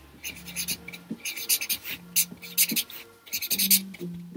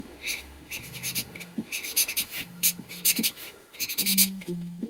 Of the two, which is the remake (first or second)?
second